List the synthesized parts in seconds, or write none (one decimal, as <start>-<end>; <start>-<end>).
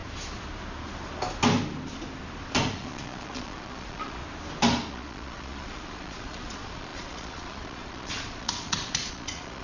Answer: 2.7-4.2; 4.9-9.6